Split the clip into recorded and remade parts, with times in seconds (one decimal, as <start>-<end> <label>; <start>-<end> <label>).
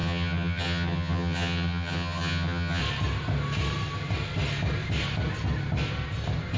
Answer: 0.0-2.8 remade; 2.8-6.6 recorded